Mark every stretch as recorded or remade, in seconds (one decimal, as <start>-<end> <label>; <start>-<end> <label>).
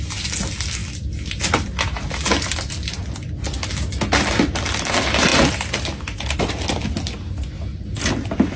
0.0-8.6 recorded